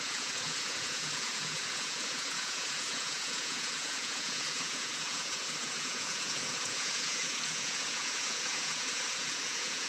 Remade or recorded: remade